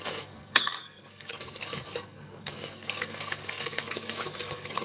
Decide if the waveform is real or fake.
fake